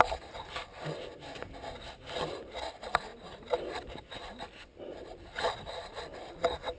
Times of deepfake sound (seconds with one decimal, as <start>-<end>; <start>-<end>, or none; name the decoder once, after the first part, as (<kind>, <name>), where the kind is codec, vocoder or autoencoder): none